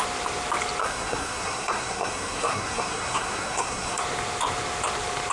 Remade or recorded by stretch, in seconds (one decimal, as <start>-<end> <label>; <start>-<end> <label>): 0.0-0.8 recorded; 0.8-4.0 remade; 4.0-5.3 recorded